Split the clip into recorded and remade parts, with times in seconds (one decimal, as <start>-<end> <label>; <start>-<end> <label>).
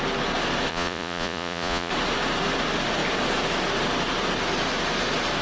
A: 0.0-0.7 recorded; 0.7-1.9 remade; 1.9-5.4 recorded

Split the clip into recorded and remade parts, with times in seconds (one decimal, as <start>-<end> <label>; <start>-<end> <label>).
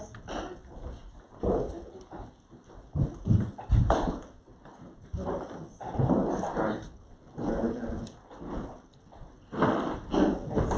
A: 0.0-10.8 recorded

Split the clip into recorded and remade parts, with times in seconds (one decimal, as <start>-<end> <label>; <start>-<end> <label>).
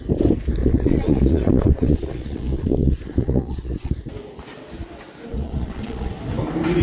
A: 0.0-0.6 recorded; 0.6-3.9 remade; 3.9-5.3 recorded; 5.3-6.1 remade; 6.1-6.8 recorded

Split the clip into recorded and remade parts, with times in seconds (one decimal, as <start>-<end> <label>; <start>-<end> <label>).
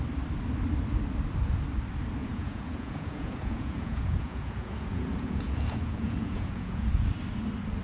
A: 0.0-2.2 recorded; 2.2-6.9 remade; 6.9-7.8 recorded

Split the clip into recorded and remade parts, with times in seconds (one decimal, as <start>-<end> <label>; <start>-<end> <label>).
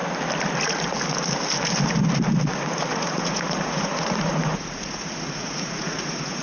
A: 0.0-2.9 recorded; 2.9-6.4 remade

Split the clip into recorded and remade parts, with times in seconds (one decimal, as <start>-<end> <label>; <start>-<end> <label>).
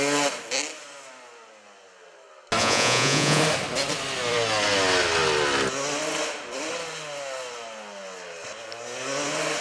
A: 0.0-2.6 recorded; 2.6-3.4 remade; 3.4-9.6 recorded